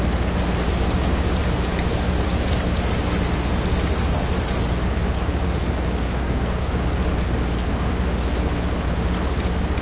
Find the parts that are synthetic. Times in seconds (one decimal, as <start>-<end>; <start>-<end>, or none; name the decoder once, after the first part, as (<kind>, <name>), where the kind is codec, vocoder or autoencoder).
6.2-6.7 (codec, SNAC)